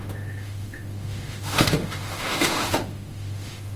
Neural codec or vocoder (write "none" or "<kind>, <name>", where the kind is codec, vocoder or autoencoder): autoencoder, DAC-VAE